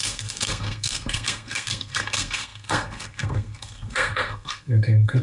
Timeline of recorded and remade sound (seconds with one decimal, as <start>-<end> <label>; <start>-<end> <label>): 0.0-5.2 remade